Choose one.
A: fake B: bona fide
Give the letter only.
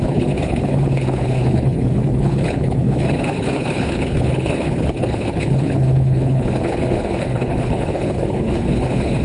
A